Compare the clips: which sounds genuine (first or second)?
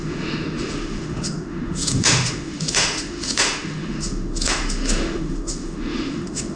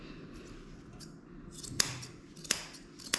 second